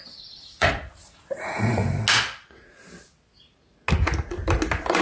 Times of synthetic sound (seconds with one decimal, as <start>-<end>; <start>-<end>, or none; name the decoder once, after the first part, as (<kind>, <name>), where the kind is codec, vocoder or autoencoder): 0.0-1.8 (vocoder, Vocos)